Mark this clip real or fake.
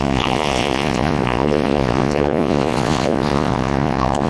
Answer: fake